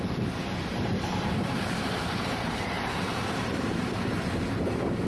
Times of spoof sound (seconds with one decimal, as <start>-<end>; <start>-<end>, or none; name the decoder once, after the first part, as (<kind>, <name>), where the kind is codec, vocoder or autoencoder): 0.9-4.0 (vocoder, BigVGAN v2)